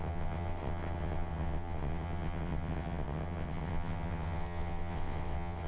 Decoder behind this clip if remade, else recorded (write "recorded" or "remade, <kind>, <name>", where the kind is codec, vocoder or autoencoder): remade, vocoder, WaveNeXt